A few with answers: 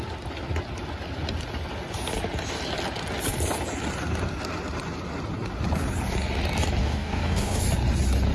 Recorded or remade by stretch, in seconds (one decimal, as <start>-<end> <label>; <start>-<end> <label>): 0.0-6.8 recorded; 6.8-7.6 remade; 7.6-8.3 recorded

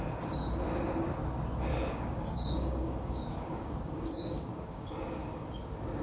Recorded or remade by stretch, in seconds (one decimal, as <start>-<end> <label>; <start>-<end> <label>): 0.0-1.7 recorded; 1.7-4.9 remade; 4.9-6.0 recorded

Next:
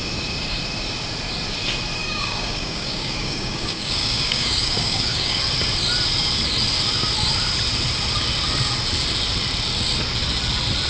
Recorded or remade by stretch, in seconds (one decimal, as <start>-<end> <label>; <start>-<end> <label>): 0.0-2.0 recorded; 2.0-5.4 remade; 5.4-10.9 recorded

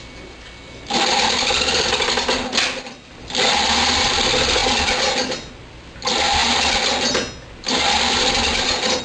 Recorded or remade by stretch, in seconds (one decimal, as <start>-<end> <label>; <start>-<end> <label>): 0.0-9.0 recorded